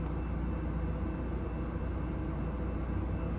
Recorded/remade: recorded